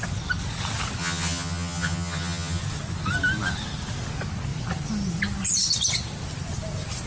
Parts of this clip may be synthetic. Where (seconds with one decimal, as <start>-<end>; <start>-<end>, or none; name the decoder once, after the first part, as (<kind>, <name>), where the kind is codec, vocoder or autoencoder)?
1.0-2.6 (vocoder, HiFi-GAN)